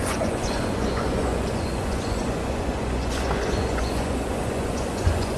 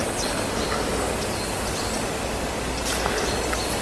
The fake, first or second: first